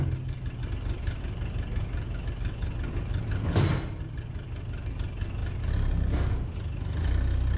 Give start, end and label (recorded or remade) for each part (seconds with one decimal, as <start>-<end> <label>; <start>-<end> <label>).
0.0-7.6 recorded